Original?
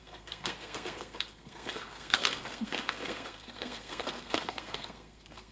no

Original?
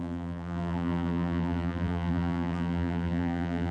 no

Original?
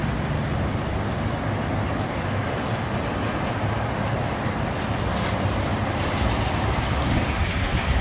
yes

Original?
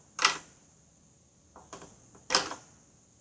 yes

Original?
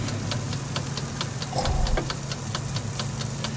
yes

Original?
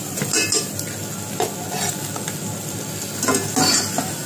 yes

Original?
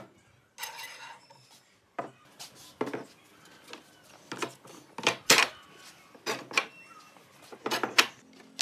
yes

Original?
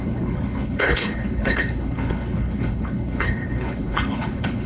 no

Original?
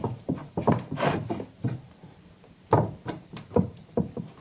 no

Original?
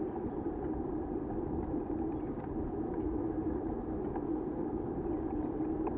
yes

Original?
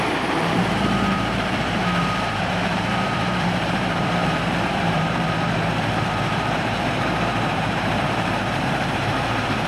no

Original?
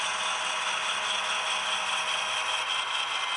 yes